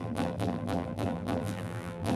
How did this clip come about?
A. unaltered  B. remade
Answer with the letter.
B